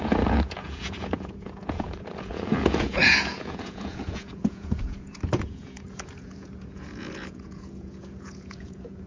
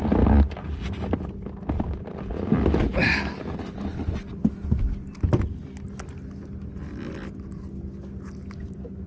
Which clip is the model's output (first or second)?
first